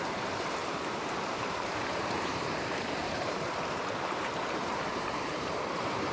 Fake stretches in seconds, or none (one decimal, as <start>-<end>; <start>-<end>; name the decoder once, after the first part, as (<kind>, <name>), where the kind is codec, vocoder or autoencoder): 0.0-6.1 (vocoder, BigVGAN v2)